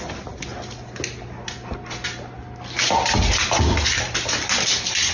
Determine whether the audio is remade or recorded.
recorded